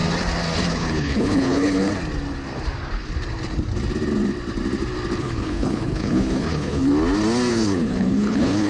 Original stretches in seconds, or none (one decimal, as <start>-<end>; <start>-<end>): 0.0-0.7; 1.9-5.2; 6.9-7.5